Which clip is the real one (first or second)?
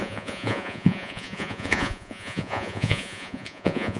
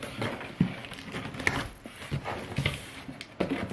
second